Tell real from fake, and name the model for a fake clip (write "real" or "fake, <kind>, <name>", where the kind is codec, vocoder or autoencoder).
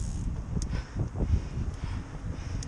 real